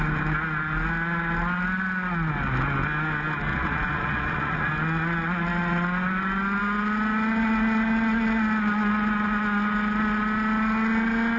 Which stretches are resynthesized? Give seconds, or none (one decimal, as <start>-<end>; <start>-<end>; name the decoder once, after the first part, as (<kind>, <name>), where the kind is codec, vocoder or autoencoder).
3.5-4.7 (vocoder, Vocos)